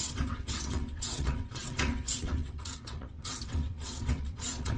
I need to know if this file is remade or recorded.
remade